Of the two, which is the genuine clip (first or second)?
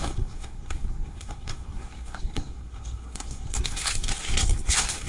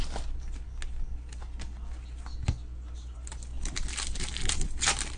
second